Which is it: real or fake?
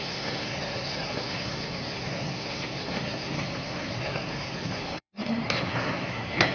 fake